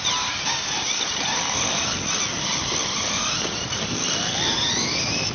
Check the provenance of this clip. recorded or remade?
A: recorded